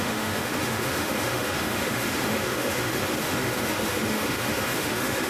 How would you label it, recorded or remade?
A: remade